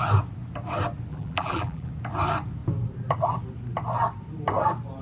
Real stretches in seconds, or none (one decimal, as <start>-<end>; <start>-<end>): 0.0-1.1; 1.9-5.0